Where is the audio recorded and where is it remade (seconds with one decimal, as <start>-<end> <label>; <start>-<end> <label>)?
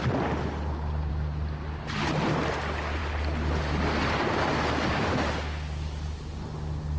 0.0-7.0 recorded